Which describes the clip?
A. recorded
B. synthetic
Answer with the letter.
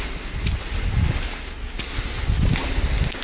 A